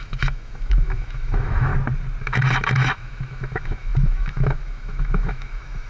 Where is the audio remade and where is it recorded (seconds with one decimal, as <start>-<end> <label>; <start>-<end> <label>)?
0.0-1.7 remade; 1.7-2.2 recorded; 2.2-5.9 remade